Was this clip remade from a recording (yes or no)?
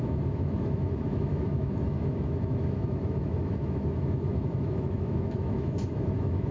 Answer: yes